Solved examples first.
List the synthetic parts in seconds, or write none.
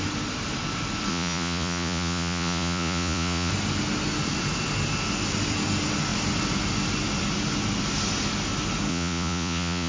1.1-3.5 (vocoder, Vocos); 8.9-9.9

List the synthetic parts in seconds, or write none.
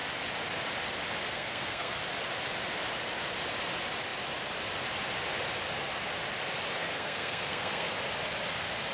1.3-2.0 (codec, SNAC); 6.8-7.9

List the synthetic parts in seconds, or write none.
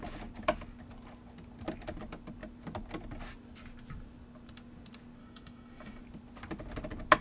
5.2-6.0 (autoencoder, DAC-VAE)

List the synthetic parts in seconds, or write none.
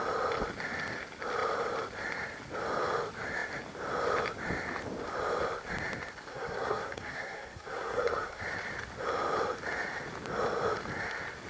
6.3-8.4 (codec, SNAC)